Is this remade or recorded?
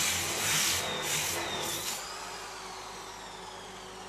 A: recorded